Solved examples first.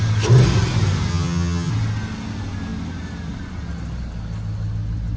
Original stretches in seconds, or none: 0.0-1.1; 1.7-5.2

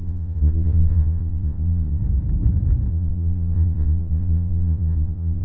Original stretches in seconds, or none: 2.0-2.9

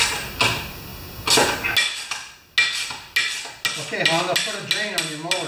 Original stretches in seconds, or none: 0.0-5.5

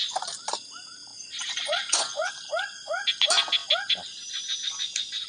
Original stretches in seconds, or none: 0.0-1.1; 2.3-5.3

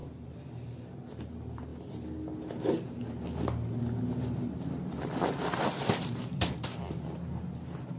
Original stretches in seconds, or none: 0.0-8.0